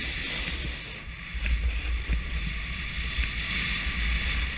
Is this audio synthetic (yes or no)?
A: no